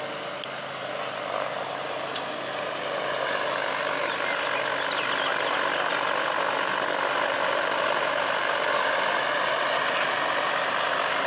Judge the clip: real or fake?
real